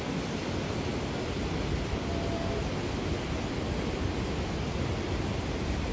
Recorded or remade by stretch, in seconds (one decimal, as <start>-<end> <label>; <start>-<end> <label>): 0.0-5.9 recorded